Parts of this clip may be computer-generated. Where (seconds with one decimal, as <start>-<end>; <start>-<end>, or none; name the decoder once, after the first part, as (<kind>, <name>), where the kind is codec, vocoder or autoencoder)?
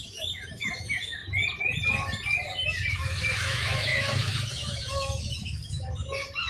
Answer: 0.0-1.2 (autoencoder, DAC-VAE); 2.9-6.5